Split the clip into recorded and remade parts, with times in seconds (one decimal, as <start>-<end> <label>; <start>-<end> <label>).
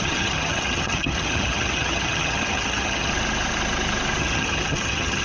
0.0-3.1 remade; 3.1-4.2 recorded; 4.2-5.2 remade